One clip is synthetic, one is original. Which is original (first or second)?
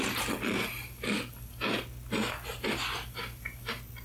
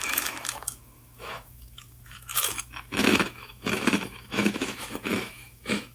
first